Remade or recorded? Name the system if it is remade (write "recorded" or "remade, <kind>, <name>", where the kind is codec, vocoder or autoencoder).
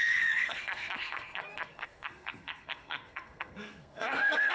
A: remade, codec, SNAC